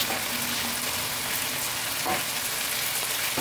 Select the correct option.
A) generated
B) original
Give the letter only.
B